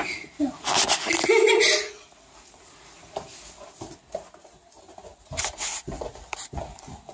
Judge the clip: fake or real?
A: real